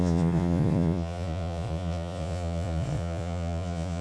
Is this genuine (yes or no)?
no